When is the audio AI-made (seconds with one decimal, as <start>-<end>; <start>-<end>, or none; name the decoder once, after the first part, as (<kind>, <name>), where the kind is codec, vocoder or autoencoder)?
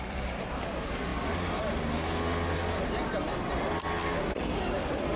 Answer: 0.0-1.1 (vocoder, BigVGAN v2); 4.2-5.2